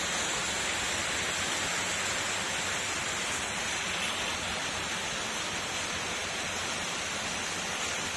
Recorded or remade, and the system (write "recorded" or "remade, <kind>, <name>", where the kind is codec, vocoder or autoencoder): recorded